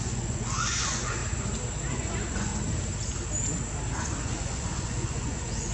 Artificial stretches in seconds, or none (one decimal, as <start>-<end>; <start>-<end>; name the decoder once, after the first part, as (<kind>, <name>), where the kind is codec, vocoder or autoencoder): 0.0-1.2 (vocoder, Vocos); 1.9-2.5; 3.9-5.7